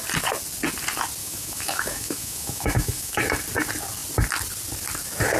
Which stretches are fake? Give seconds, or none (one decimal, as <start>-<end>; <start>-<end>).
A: 1.2-3.2